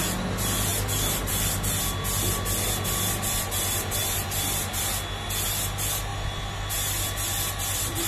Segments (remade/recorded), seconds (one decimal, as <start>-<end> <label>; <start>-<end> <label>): 0.0-8.1 recorded